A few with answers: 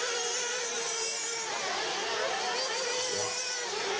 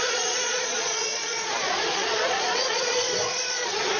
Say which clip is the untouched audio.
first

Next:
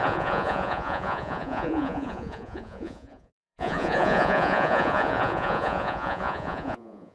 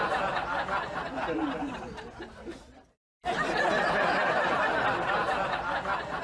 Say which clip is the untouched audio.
second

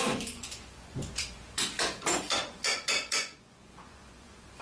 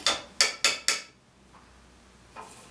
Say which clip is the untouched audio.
second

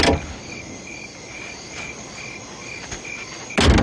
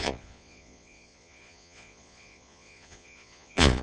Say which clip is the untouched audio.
first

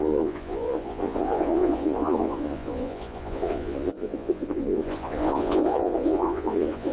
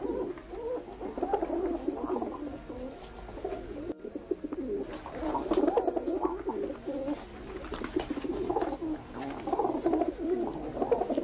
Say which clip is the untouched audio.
second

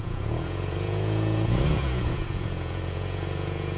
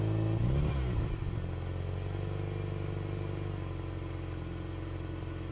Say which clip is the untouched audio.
second